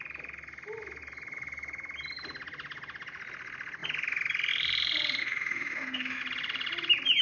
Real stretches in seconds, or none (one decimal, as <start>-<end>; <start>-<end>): 0.0-5.2; 6.2-7.2